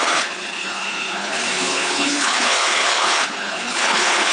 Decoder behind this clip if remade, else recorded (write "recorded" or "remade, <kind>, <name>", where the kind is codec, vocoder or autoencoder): remade, codec, HILCodec